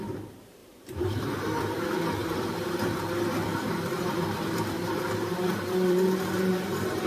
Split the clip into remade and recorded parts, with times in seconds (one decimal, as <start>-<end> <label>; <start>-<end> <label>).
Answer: 0.0-0.6 recorded; 0.6-1.3 remade; 1.3-2.2 recorded; 2.2-2.7 remade; 2.7-3.5 recorded; 3.5-7.1 remade

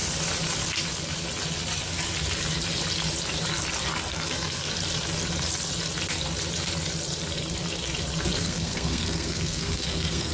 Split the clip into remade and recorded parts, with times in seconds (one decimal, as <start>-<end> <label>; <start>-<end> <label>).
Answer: 0.0-4.1 recorded; 4.1-4.7 remade; 4.7-8.3 recorded; 8.3-10.3 remade